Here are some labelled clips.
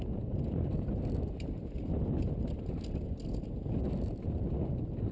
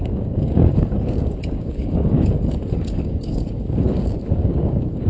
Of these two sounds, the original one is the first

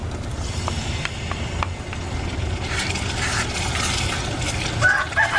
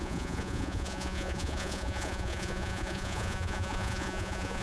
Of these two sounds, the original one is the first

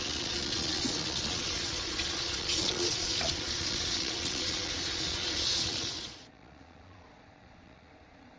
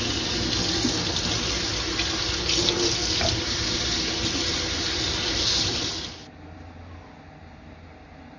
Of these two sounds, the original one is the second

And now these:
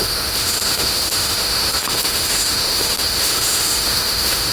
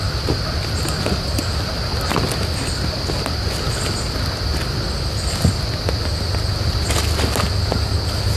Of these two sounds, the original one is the second